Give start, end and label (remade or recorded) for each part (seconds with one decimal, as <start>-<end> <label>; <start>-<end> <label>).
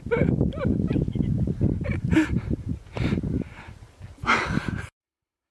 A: 0.0-0.7 recorded; 0.7-4.0 remade; 4.0-4.6 recorded; 4.6-5.5 remade